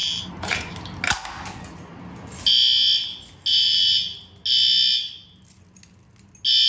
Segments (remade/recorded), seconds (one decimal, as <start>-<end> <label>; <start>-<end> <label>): 0.0-0.7 remade; 0.7-3.5 recorded; 3.5-4.2 remade; 4.2-6.7 recorded